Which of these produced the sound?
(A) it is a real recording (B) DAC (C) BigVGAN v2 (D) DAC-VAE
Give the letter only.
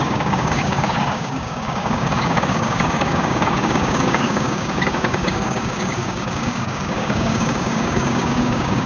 B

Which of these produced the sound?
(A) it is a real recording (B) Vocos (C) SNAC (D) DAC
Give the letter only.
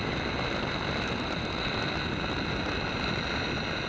A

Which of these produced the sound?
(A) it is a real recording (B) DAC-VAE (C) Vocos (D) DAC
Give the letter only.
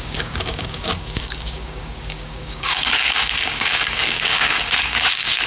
D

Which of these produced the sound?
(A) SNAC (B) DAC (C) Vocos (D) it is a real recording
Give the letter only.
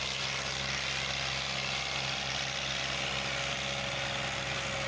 D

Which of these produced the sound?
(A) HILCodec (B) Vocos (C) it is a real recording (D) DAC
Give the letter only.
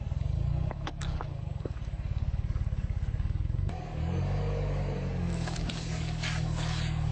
D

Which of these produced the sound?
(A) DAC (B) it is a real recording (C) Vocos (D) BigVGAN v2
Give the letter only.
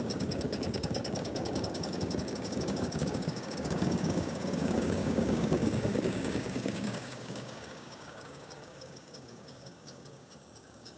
A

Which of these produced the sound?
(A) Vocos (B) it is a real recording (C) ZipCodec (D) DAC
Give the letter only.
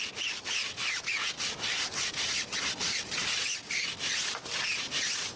B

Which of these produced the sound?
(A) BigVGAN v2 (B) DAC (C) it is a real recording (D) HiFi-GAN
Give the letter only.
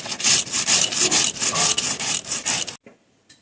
C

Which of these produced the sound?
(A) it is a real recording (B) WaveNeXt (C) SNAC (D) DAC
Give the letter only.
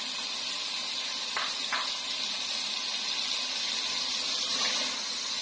A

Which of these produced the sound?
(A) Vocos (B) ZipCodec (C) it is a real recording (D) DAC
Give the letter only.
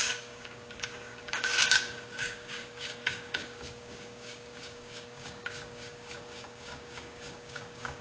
D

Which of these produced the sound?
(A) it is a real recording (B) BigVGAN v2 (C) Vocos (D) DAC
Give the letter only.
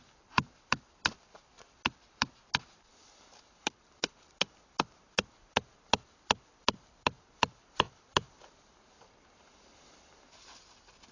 A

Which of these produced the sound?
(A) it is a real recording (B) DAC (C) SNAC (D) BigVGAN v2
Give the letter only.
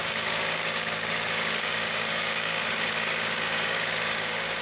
B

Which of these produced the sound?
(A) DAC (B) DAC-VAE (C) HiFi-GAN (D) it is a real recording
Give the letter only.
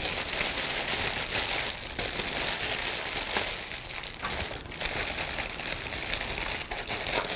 D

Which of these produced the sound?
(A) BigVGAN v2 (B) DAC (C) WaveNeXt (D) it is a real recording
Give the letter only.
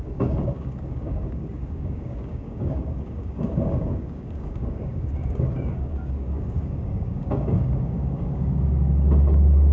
B